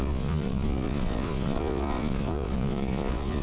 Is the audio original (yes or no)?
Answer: no